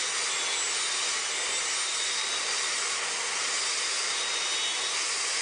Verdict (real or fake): real